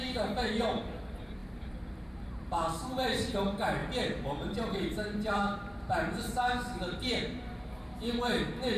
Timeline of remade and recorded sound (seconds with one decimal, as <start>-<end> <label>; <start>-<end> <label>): 0.0-8.8 remade